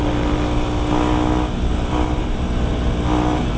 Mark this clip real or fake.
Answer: real